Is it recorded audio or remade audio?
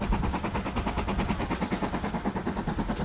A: recorded